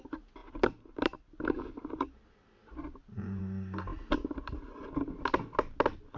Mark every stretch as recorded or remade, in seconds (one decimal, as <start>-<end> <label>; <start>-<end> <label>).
0.0-6.2 recorded